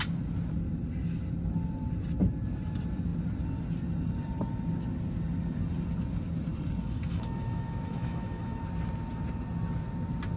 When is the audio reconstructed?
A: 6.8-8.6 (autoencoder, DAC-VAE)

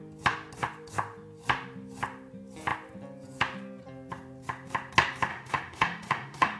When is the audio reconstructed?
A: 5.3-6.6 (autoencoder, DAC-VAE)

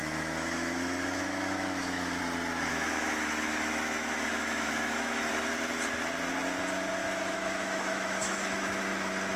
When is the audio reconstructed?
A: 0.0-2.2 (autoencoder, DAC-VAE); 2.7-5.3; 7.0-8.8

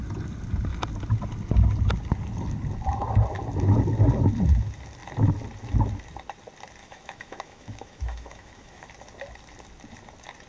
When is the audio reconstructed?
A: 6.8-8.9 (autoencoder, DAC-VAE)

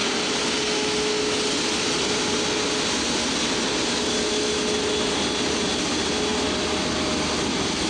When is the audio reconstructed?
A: none